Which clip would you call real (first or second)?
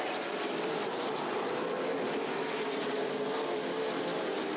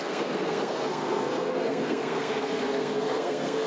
first